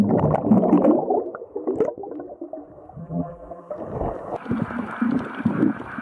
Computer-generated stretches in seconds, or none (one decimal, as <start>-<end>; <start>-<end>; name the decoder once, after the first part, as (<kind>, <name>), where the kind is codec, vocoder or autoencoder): 3.0-3.7 (vocoder, BigVGAN v2)